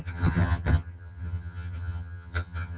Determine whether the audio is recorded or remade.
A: remade